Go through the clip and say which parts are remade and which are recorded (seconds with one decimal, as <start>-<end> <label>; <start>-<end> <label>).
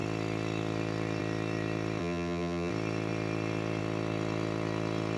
0.0-2.0 recorded; 2.0-2.7 remade; 2.7-5.2 recorded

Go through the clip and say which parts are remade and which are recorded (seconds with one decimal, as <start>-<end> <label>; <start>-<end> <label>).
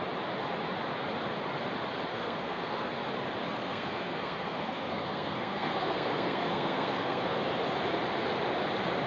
0.0-2.1 recorded; 2.1-2.9 remade; 2.9-3.4 recorded; 3.4-7.4 remade; 7.4-9.1 recorded